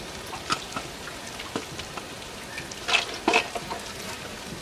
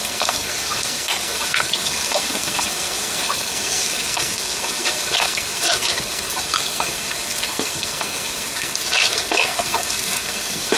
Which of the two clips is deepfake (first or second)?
second